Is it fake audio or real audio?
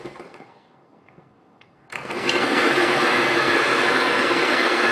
fake